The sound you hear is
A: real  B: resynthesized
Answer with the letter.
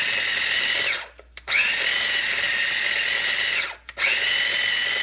A